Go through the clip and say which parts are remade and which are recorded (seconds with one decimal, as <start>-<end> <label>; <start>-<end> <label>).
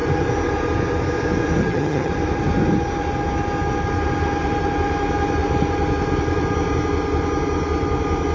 0.0-1.6 recorded; 1.6-2.1 remade; 2.1-8.3 recorded